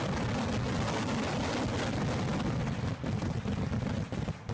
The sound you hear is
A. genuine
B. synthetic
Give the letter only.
A